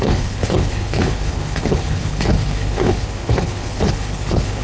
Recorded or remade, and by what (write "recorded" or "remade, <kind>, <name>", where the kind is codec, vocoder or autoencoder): remade, codec, HILCodec